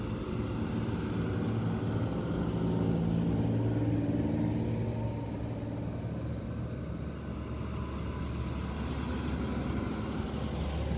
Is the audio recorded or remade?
recorded